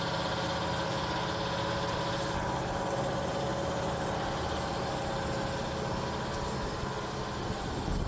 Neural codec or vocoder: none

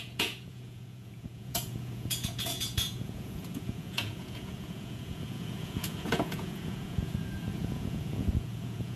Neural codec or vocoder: vocoder, Vocos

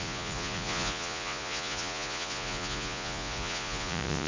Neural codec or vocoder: vocoder, Vocos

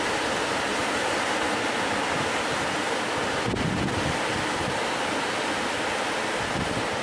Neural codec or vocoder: none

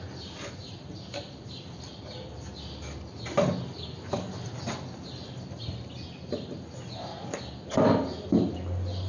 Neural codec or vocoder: none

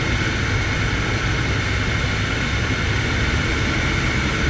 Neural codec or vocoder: none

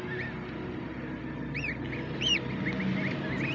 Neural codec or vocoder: none